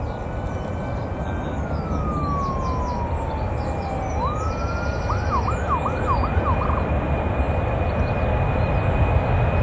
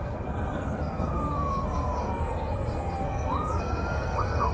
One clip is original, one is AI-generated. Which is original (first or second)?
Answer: first